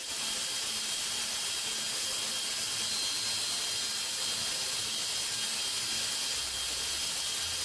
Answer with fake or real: real